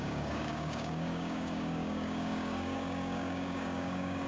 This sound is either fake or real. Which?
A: fake